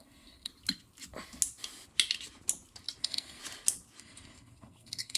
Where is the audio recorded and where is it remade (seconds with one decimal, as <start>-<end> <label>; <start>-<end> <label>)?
0.0-0.5 remade; 0.5-3.0 recorded; 3.0-3.4 remade; 3.4-4.0 recorded; 4.0-5.2 remade